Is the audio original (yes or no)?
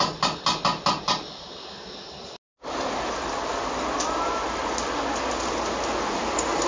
yes